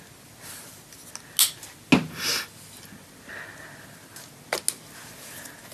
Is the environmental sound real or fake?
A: real